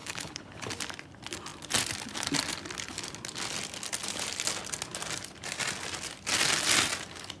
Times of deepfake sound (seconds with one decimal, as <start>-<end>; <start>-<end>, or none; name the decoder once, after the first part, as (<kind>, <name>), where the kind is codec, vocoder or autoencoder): 0.0-0.7 (codec, HILCodec)